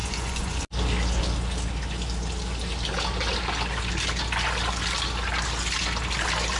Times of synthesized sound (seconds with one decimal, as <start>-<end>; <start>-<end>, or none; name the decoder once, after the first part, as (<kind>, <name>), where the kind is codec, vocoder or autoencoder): 0.0-0.6 (vocoder, Vocos)